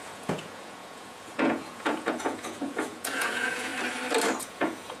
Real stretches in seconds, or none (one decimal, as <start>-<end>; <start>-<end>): 3.7-4.4